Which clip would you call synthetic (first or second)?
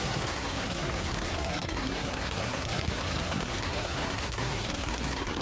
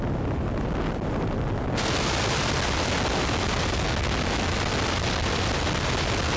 first